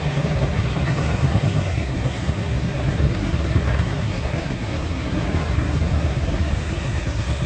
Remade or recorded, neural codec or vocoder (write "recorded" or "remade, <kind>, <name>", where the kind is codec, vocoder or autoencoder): remade, codec, SNAC